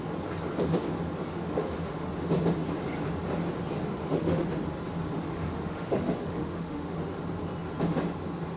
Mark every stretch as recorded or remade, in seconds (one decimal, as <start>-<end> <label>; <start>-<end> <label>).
0.0-1.3 recorded; 1.3-2.1 remade; 2.1-3.9 recorded; 3.9-4.5 remade; 4.5-5.1 recorded; 5.1-7.2 remade; 7.2-8.6 recorded